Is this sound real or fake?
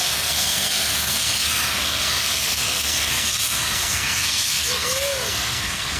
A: fake